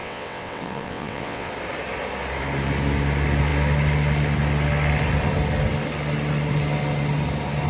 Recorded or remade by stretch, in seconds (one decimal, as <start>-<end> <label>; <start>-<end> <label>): 0.0-1.5 remade; 1.5-7.7 recorded